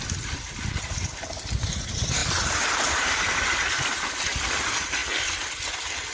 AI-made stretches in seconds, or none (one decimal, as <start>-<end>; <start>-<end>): none